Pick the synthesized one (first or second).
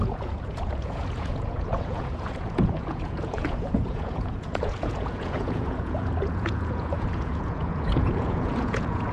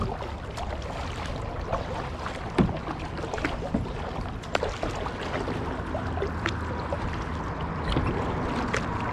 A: first